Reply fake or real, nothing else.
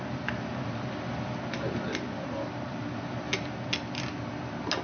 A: real